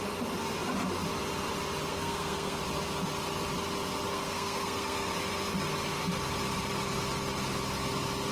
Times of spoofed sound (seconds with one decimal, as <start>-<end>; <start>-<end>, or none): 1.9-2.6; 4.1-5.1